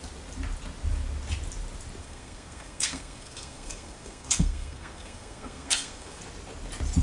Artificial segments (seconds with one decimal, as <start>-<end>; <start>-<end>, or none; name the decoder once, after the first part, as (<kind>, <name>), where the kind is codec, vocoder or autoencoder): 2.0-6.2 (codec, SNAC)